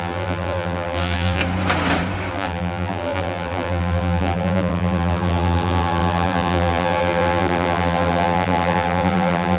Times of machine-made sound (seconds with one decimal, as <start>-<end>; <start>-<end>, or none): 0.0-1.4; 2.3-9.6